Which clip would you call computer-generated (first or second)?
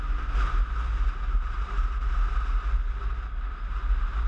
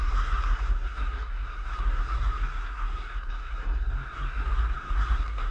second